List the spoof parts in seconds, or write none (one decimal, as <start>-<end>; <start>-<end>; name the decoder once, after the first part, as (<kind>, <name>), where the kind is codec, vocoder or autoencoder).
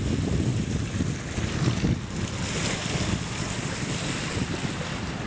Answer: none